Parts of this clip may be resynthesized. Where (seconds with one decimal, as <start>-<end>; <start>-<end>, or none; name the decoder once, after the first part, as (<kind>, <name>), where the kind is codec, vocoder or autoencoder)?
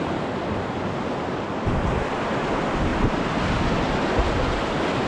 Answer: 2.9-3.6 (vocoder, BigVGAN v2)